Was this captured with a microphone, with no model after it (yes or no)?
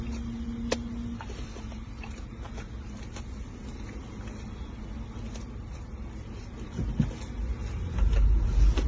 yes